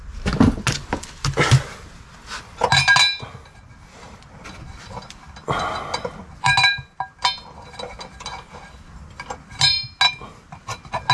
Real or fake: real